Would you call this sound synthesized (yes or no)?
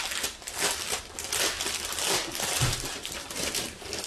no